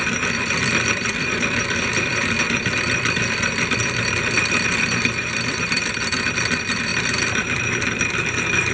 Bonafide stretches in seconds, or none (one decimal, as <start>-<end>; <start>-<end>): none